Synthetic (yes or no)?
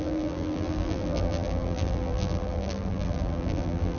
yes